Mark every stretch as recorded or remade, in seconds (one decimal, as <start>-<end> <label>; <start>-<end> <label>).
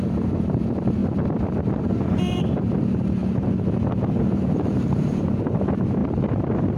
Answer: 0.0-1.0 remade; 1.0-1.6 recorded; 1.6-3.2 remade; 3.2-4.2 recorded; 4.2-6.8 remade